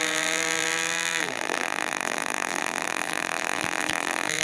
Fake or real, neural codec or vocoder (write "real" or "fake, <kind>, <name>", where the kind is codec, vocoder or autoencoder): fake, vocoder, BigVGAN v2